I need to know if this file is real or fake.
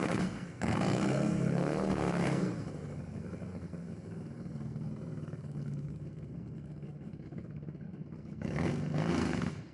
fake